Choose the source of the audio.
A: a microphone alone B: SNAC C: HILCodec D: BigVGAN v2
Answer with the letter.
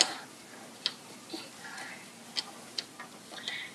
A